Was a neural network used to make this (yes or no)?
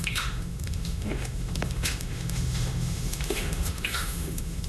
yes